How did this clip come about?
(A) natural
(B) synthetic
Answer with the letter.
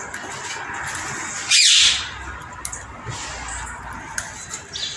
A